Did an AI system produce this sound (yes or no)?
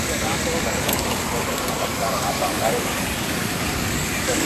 yes